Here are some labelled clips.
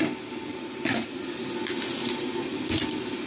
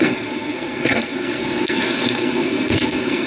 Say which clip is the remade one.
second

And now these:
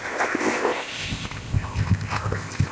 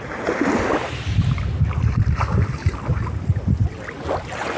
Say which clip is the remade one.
first